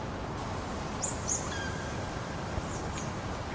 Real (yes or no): yes